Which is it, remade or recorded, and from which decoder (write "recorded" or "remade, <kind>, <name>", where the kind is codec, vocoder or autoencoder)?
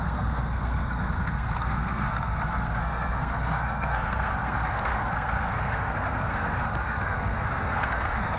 remade, codec, SNAC